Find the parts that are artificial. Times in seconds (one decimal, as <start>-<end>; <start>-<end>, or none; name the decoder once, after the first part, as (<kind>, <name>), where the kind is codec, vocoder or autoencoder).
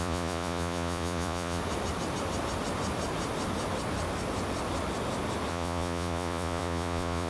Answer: 0.0-1.6 (vocoder, Vocos); 5.5-7.3